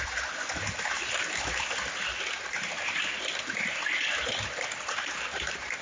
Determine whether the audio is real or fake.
fake